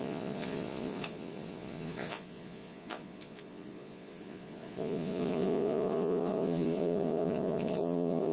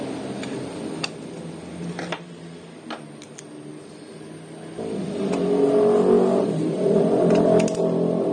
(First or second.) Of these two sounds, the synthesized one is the first